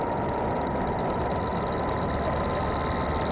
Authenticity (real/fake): real